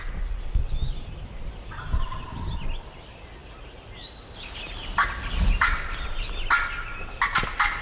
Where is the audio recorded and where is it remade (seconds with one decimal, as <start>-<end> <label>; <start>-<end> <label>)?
0.0-7.8 recorded